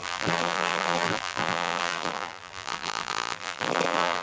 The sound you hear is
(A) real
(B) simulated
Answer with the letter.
B